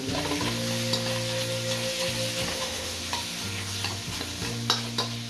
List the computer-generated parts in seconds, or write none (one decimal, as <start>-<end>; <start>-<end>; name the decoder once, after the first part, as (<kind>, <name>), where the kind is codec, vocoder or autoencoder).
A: 2.5-3.0 (autoencoder, DAC-VAE)